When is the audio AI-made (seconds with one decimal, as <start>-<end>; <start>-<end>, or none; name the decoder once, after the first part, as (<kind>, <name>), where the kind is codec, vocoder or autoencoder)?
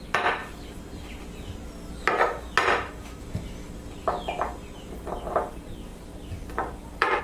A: 5.9-7.2 (vocoder, BigVGAN v2)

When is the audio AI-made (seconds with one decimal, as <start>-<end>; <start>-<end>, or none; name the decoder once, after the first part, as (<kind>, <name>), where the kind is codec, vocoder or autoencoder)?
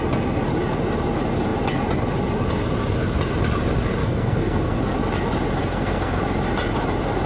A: 4.0-4.8 (codec, SNAC); 5.6-6.2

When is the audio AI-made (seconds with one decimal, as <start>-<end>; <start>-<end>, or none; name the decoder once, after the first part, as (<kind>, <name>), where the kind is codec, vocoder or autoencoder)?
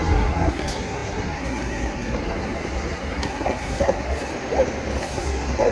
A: 0.0-4.3 (codec, SNAC); 5.0-5.7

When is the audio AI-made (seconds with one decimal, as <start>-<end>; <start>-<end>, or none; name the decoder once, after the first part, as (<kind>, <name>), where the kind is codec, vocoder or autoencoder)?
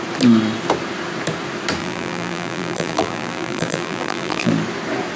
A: 1.8-4.5 (vocoder, BigVGAN v2)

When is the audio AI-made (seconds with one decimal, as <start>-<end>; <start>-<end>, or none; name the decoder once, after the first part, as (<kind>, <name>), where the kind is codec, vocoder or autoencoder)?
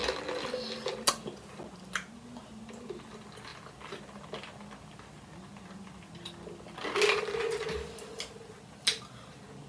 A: none